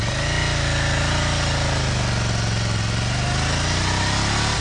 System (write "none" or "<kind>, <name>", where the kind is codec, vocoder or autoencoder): none